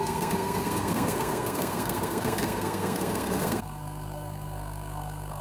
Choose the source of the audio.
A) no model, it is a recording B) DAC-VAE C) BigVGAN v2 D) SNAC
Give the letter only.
D